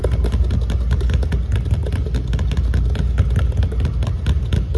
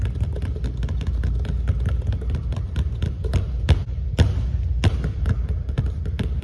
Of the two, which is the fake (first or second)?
second